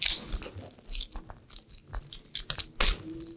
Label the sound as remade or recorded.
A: recorded